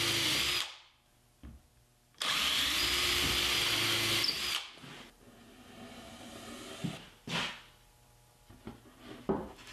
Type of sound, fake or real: real